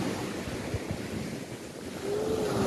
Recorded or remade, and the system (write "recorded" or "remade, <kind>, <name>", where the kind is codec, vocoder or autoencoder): recorded